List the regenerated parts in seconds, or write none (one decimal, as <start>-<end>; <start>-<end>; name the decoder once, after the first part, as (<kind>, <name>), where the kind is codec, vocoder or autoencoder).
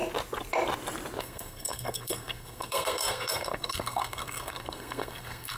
1.2-5.6 (codec, SNAC)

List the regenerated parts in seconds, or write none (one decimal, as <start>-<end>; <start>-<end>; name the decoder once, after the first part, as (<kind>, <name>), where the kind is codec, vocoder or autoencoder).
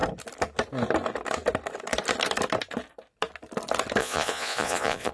4.0-5.1 (vocoder, Vocos)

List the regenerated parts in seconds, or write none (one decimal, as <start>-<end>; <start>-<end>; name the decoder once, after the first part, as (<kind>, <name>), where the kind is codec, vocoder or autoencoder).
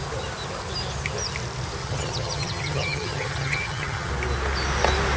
1.8-4.1 (vocoder, HiFi-GAN)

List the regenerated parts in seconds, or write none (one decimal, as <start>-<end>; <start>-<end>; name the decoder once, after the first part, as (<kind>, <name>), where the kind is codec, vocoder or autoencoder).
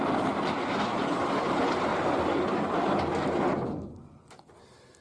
none